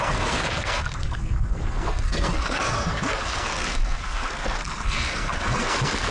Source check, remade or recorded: remade